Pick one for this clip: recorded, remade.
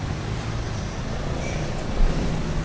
recorded